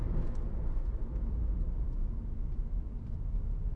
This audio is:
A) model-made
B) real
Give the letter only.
B